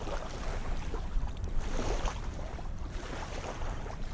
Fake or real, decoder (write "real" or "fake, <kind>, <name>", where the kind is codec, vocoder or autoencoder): fake, vocoder, BigVGAN v2